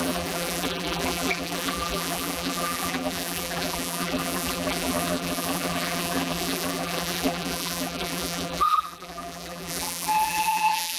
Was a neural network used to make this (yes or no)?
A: yes